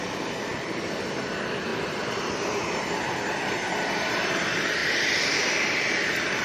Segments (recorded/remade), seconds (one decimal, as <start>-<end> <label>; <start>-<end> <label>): 0.0-1.7 recorded; 1.7-2.5 remade; 2.5-6.4 recorded